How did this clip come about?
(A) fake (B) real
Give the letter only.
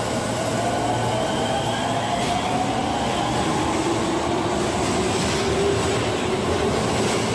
B